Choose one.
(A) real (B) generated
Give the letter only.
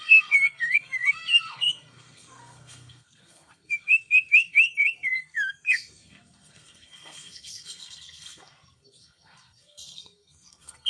B